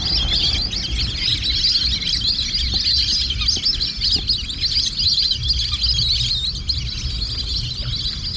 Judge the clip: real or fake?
real